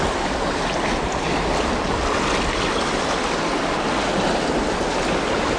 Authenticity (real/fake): real